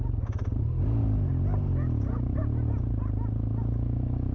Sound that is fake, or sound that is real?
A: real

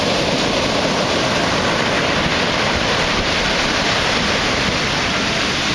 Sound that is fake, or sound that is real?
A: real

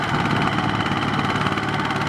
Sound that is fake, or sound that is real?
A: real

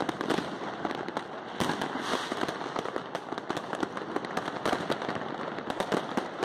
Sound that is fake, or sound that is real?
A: real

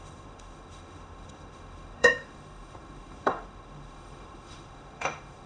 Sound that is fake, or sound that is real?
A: fake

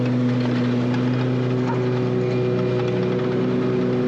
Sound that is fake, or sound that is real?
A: real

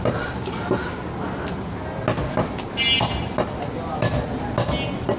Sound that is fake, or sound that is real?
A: real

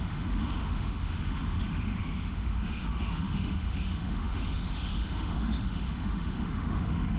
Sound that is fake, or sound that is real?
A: fake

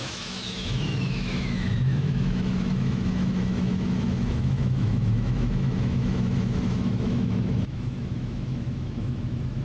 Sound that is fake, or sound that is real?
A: fake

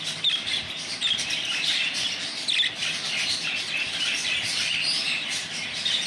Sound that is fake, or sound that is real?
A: real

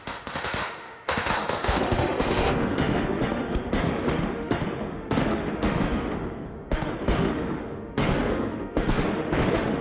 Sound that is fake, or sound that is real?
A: fake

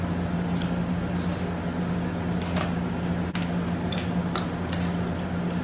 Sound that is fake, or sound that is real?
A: real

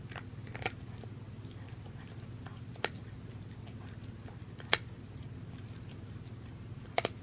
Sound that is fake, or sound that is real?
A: real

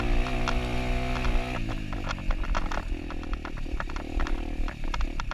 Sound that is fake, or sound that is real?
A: real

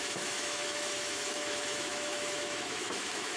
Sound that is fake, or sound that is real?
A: fake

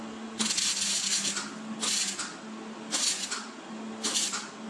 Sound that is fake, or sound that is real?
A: real